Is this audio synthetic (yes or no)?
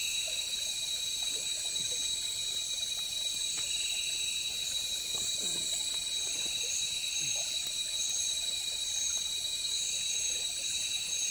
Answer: no